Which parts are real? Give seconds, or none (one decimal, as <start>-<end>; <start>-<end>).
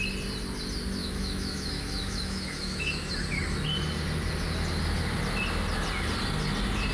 0.0-1.0; 3.1-6.9